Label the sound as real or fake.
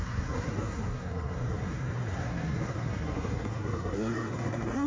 fake